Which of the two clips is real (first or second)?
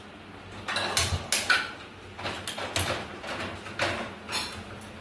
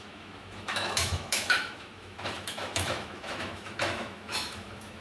first